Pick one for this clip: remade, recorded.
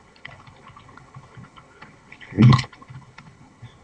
remade